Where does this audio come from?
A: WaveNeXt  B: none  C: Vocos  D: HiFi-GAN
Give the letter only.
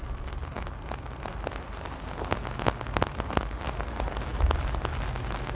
B